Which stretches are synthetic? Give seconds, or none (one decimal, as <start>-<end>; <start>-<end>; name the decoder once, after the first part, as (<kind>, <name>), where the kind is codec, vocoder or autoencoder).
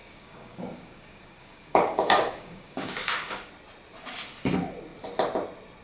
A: 0.0-3.5 (codec, DAC)